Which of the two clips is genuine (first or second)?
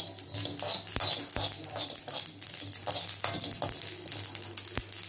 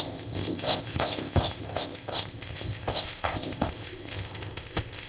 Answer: first